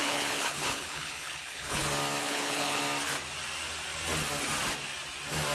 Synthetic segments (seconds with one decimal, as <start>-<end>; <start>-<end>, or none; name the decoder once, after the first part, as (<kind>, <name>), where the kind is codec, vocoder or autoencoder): 0.0-1.8 (codec, HILCodec); 2.2-2.8